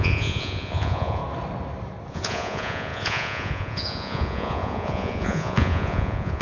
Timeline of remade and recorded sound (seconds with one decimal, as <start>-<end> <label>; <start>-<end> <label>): 0.0-1.2 remade; 1.2-2.1 recorded; 2.1-6.4 remade